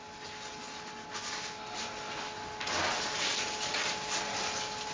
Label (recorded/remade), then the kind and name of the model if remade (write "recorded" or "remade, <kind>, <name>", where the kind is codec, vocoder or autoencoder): recorded